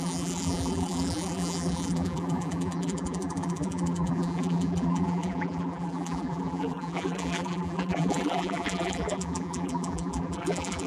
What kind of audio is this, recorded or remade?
remade